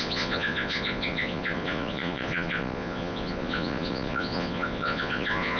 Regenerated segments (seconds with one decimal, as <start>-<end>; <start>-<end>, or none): 0.0-5.6